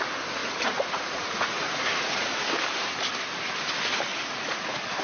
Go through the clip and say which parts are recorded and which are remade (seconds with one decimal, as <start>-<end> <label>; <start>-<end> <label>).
0.0-0.4 recorded; 0.4-2.4 remade; 2.4-4.1 recorded; 4.1-5.0 remade